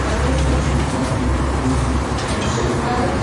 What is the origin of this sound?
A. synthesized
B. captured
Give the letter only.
A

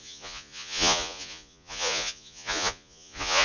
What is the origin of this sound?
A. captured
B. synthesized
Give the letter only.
B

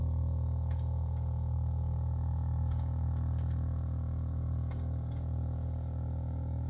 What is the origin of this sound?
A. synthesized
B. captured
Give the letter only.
A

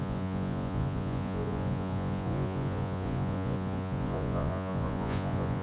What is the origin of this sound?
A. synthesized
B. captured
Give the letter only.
A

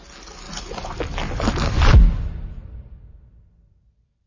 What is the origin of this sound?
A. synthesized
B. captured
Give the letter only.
B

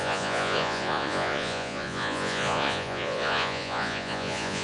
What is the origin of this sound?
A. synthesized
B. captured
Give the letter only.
A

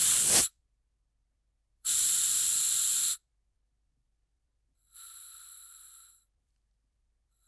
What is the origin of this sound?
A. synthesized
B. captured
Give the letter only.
A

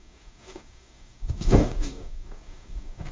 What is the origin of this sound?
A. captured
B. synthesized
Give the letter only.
B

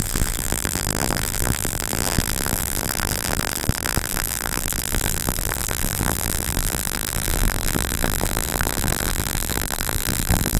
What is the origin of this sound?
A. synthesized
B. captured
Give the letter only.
A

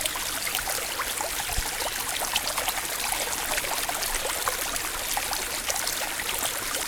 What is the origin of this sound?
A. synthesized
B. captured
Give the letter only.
B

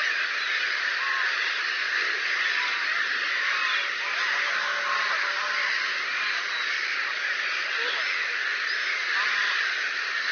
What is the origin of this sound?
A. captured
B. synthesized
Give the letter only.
A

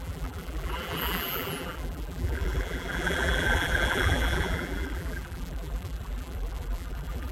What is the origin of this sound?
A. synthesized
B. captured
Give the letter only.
A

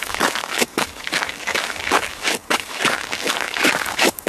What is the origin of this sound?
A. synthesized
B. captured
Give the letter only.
A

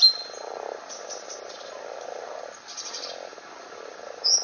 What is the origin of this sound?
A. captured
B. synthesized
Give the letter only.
A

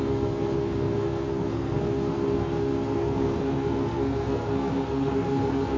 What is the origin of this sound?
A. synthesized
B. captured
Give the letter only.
A